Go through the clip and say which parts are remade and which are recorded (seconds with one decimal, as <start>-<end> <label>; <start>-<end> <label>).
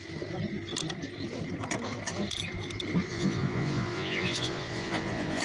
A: 0.0-3.1 recorded; 3.1-5.4 remade